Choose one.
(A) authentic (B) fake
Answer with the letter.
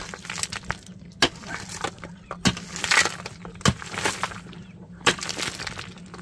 A